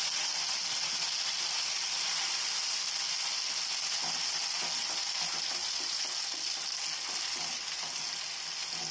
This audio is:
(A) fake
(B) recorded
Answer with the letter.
B